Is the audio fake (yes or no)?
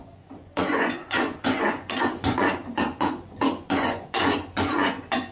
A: yes